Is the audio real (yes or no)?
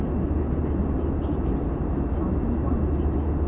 yes